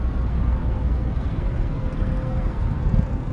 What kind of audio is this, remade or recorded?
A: remade